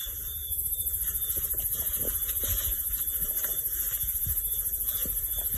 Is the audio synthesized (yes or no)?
yes